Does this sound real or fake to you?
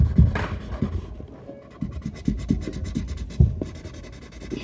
real